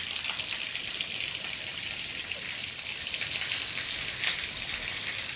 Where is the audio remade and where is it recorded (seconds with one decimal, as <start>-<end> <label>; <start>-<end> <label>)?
0.0-5.4 recorded